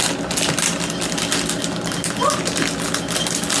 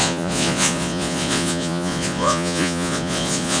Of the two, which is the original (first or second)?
first